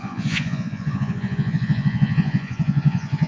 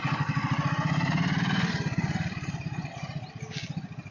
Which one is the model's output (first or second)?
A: first